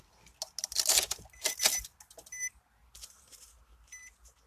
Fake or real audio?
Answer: real